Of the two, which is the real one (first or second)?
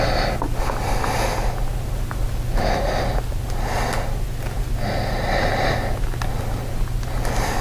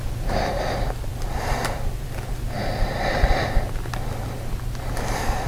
first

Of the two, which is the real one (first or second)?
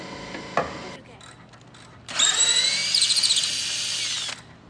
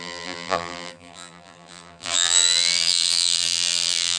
first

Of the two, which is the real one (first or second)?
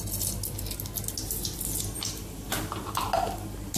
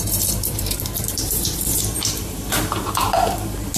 first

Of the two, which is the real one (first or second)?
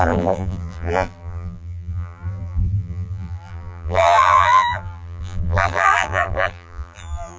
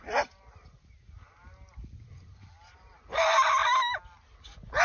second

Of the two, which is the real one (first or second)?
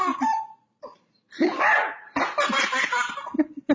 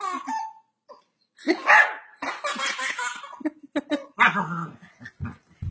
second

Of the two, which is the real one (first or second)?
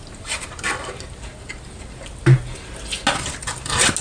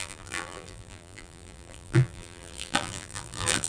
first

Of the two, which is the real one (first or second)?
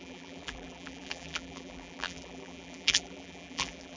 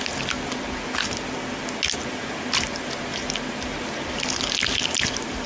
second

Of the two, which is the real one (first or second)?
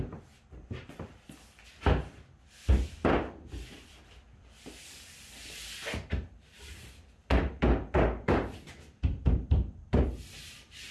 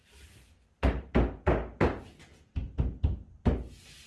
second